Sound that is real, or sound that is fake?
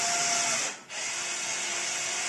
real